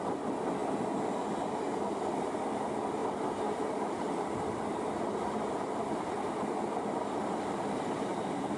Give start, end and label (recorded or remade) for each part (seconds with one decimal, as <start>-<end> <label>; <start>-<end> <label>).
0.0-0.6 remade; 0.6-2.6 recorded; 2.6-8.6 remade